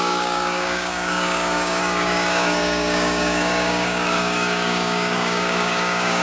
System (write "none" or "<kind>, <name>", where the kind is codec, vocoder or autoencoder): codec, DAC